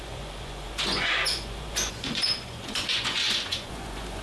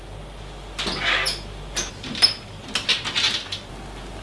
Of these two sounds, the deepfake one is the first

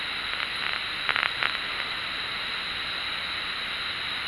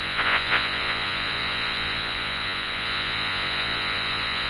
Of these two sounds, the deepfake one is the second